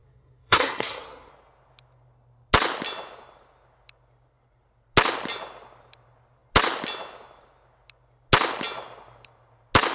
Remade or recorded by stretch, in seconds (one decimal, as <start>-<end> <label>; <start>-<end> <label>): 0.0-1.3 remade; 1.3-9.9 recorded